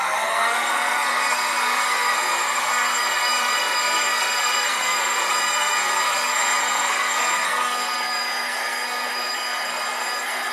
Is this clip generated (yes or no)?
yes